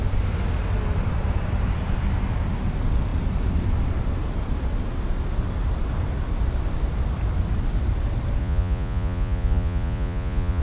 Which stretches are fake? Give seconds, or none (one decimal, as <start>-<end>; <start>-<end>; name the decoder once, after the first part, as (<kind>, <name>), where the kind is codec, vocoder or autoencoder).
8.4-10.6 (vocoder, Vocos)